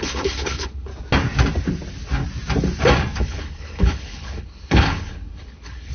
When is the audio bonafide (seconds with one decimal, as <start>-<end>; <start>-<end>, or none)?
0.9-3.2